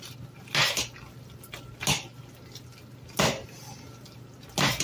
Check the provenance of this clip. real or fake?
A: real